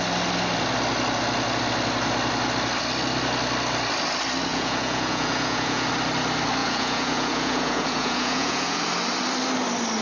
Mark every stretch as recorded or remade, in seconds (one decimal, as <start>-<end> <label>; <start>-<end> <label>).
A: 0.0-4.5 recorded; 4.5-5.9 remade; 5.9-6.6 recorded; 6.6-8.8 remade; 8.8-10.0 recorded